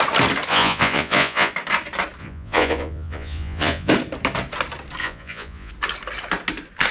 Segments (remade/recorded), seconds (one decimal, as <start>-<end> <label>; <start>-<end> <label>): 0.0-0.5 recorded; 0.5-1.5 remade; 1.5-2.2 recorded; 2.2-3.9 remade; 3.9-5.0 recorded; 5.0-5.7 remade; 5.7-6.9 recorded